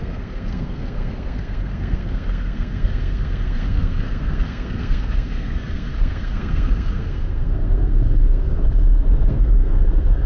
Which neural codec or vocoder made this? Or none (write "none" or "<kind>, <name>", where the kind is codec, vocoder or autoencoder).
codec, SNAC